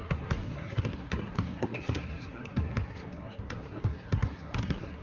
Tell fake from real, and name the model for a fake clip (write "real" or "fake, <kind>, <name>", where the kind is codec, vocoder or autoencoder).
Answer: fake, codec, SNAC